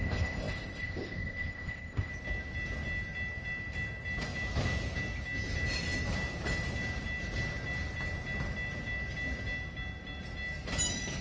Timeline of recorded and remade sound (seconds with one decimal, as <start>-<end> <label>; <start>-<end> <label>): 0.0-2.1 remade; 2.1-11.2 recorded